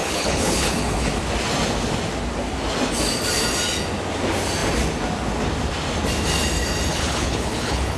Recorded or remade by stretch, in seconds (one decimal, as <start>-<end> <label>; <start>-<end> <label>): 0.0-1.1 remade; 1.1-6.9 recorded; 6.9-8.0 remade